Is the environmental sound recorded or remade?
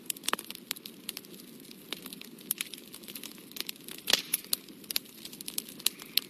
recorded